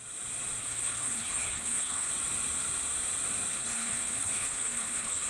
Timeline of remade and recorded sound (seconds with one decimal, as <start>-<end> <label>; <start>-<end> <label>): 0.0-0.6 recorded; 0.6-2.1 remade; 2.1-3.5 recorded; 3.5-5.3 remade